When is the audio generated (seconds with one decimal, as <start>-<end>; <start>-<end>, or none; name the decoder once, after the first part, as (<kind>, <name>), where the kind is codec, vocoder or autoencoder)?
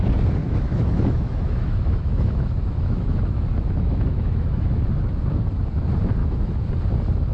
0.4-4.8 (autoencoder, DAC-VAE); 6.2-6.7